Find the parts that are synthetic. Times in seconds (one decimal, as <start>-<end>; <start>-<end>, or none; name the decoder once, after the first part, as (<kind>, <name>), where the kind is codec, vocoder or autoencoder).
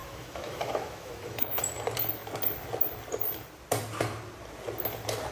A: 0.0-1.6 (autoencoder, DAC-VAE)